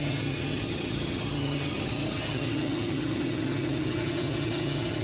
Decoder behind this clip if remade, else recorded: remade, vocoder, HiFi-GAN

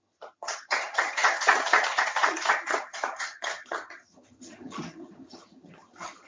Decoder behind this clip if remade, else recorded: remade, vocoder, HiFi-GAN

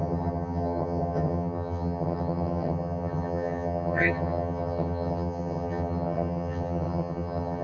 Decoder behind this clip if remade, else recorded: remade, vocoder, HiFi-GAN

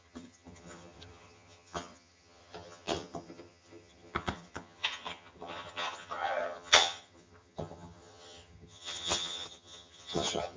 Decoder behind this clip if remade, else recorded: remade, vocoder, HiFi-GAN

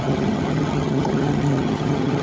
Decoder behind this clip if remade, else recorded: remade, vocoder, HiFi-GAN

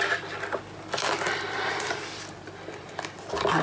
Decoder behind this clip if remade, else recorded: recorded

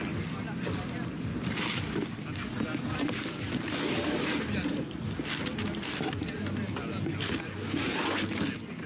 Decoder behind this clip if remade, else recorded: recorded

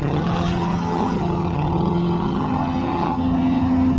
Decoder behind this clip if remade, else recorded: remade, vocoder, HiFi-GAN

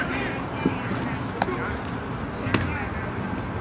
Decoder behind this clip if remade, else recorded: recorded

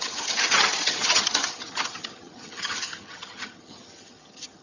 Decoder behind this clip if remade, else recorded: remade, vocoder, HiFi-GAN